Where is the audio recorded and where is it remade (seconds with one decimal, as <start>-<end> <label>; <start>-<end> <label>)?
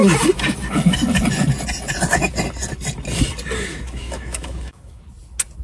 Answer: 0.0-3.7 recorded; 3.7-5.0 remade; 5.0-5.6 recorded